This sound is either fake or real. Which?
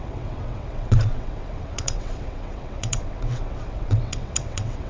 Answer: fake